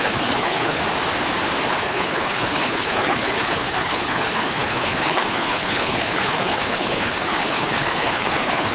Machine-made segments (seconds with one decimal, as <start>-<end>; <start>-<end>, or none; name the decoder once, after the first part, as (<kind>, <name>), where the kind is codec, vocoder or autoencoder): 0.0-0.8 (codec, HILCodec); 1.7-8.7